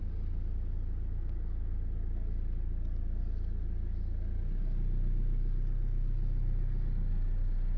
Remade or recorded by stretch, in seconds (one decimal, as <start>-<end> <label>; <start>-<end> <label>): 0.0-7.8 recorded